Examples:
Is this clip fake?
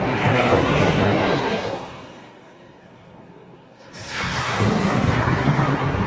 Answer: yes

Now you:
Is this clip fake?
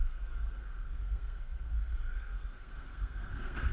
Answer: yes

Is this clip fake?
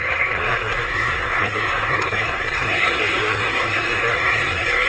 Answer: yes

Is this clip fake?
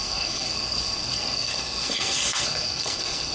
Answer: yes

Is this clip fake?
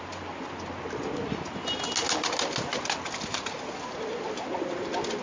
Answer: no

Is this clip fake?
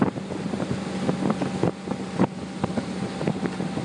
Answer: no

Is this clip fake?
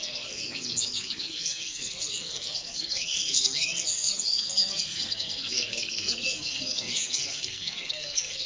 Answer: yes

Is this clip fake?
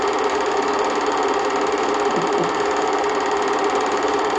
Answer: no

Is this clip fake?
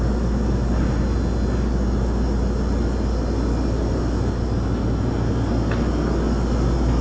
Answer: no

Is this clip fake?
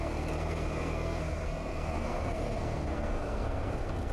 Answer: yes